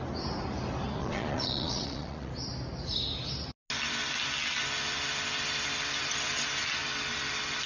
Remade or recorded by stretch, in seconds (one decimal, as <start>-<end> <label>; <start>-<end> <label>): 0.0-1.0 recorded; 1.0-2.3 remade; 2.3-7.7 recorded